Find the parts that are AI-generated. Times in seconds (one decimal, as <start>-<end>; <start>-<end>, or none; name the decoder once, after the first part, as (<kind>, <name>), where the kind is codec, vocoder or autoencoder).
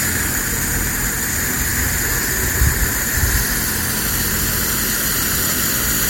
none